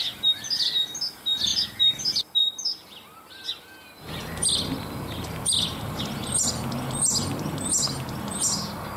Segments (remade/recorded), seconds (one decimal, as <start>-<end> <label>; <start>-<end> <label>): 0.0-9.0 recorded